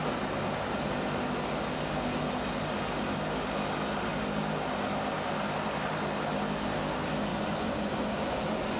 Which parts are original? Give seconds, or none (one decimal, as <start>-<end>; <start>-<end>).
0.0-7.3

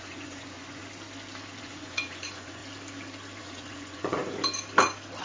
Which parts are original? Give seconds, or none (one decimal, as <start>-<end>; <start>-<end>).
0.8-1.6; 2.6-3.4; 4.2-5.2